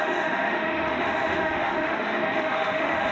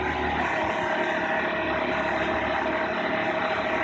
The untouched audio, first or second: second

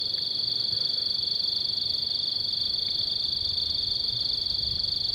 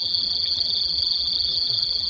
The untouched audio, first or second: first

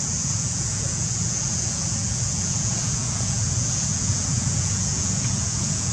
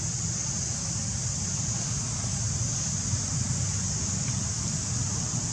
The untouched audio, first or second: second